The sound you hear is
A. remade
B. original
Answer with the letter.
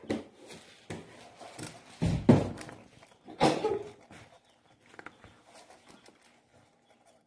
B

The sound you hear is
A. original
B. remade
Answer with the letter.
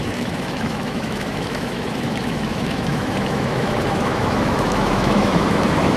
B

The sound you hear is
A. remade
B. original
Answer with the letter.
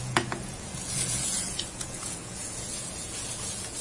A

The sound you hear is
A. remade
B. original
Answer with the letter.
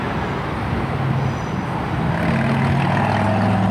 B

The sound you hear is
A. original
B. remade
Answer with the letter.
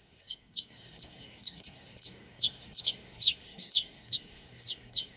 B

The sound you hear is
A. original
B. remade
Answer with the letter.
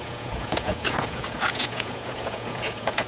B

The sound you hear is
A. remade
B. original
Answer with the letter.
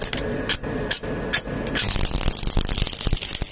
B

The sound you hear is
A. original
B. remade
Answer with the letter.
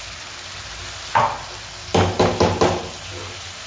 A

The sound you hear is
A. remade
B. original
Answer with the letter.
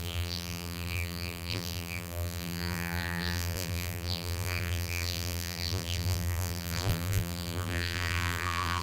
A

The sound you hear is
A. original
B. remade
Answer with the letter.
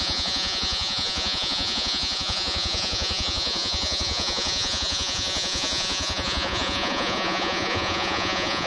B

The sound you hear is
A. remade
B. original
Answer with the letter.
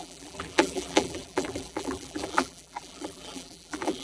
A